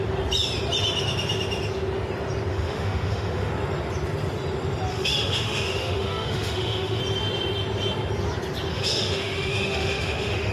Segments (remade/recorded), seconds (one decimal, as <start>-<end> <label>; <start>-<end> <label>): 0.0-2.5 recorded; 2.5-3.5 remade; 3.5-4.9 recorded; 4.9-7.0 remade; 7.0-8.7 recorded; 8.7-10.5 remade